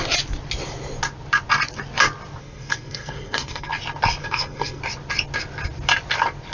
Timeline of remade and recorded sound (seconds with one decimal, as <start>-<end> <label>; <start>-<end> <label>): 0.0-2.4 recorded; 2.4-3.7 remade; 3.7-4.2 recorded; 4.2-4.8 remade; 4.8-6.5 recorded